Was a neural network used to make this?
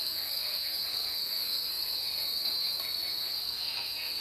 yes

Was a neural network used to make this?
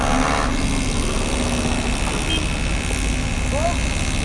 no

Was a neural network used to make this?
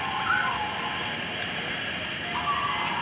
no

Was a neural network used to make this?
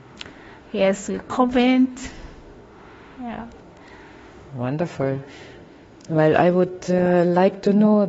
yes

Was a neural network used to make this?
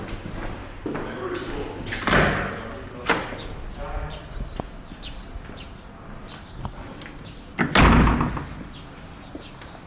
no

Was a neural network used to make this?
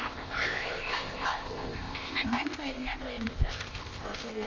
yes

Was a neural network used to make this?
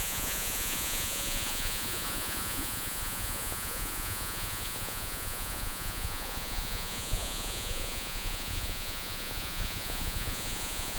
yes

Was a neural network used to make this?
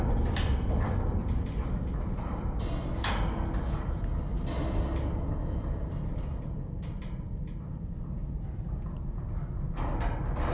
no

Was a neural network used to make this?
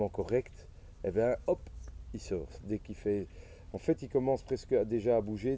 no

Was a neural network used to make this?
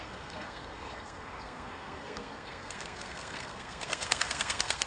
yes